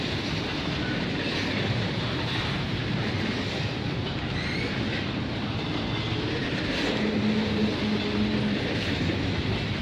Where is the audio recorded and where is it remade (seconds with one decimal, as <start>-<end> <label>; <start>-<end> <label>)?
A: 0.0-0.5 recorded; 0.5-4.2 remade; 4.2-6.4 recorded; 6.4-7.1 remade; 7.1-9.8 recorded